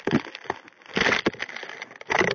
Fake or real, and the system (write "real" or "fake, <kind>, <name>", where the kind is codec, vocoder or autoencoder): real